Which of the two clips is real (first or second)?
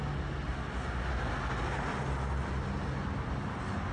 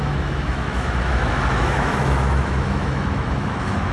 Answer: first